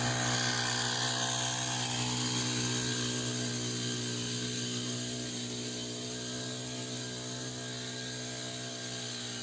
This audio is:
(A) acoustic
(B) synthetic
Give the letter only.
A